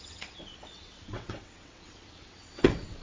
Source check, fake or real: fake